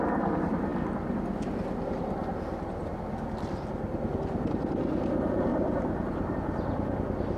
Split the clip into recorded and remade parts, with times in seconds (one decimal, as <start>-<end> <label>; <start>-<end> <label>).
0.0-5.5 recorded; 5.5-6.3 remade; 6.3-7.4 recorded